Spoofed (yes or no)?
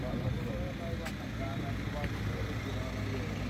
no